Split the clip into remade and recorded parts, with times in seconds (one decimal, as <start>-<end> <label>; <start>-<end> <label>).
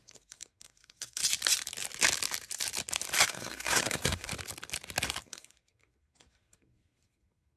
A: 0.0-1.2 remade; 1.2-3.2 recorded; 3.2-4.3 remade; 4.3-5.2 recorded; 5.2-7.6 remade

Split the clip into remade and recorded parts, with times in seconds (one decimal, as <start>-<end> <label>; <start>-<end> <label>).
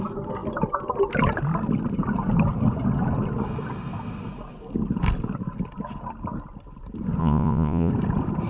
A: 0.0-7.2 recorded; 7.2-7.9 remade; 7.9-8.5 recorded